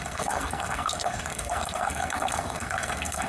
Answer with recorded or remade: remade